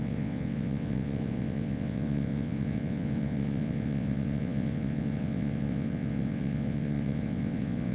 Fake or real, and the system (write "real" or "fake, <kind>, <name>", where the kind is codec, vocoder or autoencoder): fake, vocoder, WaveNeXt